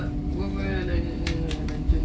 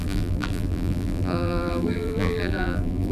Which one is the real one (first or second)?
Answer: first